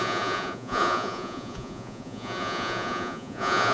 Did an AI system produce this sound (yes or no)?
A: yes